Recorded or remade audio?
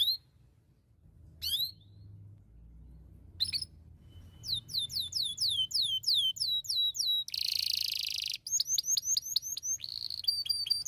recorded